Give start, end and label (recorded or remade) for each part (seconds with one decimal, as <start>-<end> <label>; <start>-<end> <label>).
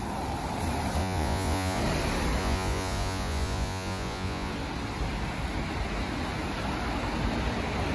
0.0-1.0 recorded; 1.0-1.8 remade; 1.8-2.4 recorded; 2.4-4.5 remade; 4.5-7.9 recorded